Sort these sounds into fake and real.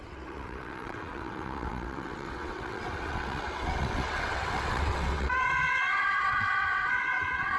fake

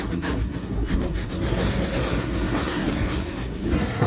fake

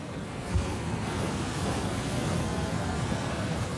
fake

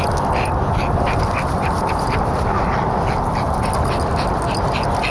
real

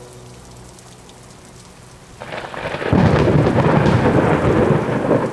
real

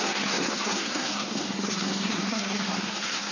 fake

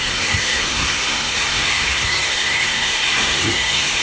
fake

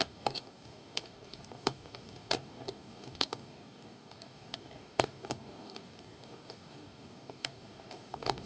fake